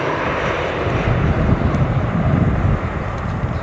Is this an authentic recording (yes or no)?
yes